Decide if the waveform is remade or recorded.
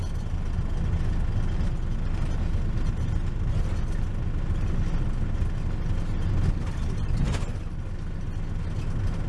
recorded